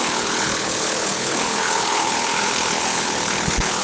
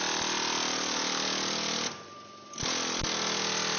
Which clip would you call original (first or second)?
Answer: second